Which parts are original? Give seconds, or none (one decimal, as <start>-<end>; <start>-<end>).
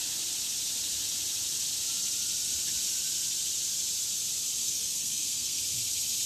0.0-4.6; 5.6-6.3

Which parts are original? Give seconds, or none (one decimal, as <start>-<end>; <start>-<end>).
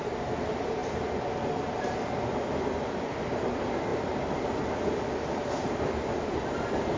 0.0-3.9; 6.4-7.0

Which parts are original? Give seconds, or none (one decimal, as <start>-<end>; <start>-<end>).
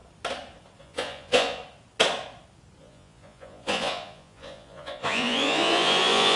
0.0-0.8; 1.6-2.8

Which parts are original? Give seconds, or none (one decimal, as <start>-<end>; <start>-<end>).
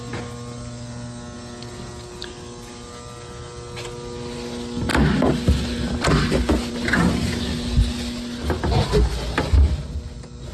0.0-10.5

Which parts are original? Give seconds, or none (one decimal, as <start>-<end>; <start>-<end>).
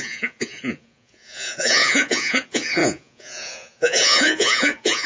none